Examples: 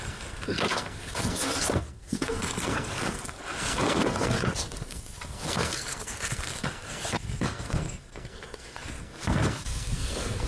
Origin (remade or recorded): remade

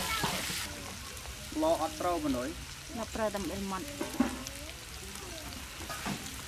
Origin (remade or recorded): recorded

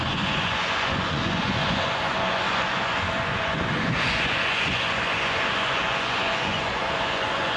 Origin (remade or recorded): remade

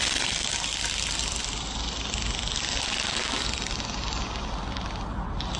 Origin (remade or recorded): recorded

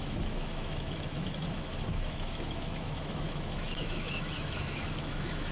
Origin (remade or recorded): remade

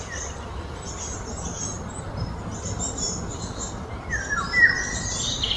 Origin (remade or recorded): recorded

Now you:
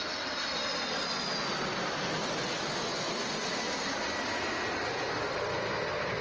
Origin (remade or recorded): recorded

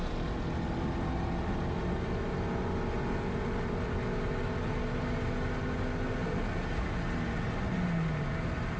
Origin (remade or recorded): recorded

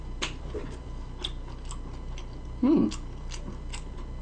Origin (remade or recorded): recorded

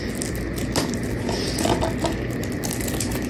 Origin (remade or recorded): recorded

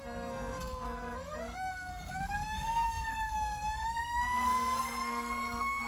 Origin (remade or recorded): remade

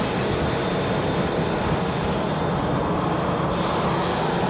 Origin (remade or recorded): recorded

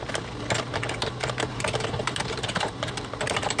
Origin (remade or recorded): recorded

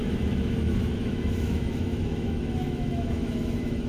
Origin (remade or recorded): remade